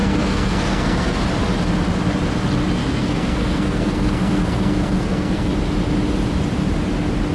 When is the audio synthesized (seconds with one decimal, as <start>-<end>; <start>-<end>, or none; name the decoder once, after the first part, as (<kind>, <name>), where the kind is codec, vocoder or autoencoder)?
0.0-1.2 (codec, SNAC); 2.8-5.5